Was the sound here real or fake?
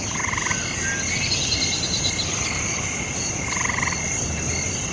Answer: real